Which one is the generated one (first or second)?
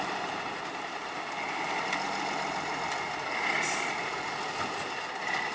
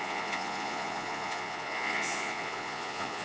second